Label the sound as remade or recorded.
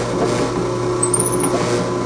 recorded